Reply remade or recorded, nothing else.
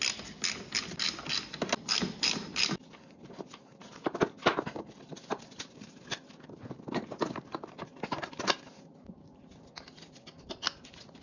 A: recorded